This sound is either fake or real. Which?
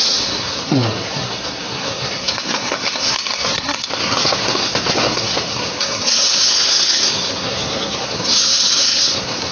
fake